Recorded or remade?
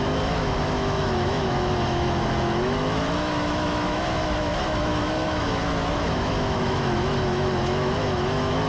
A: remade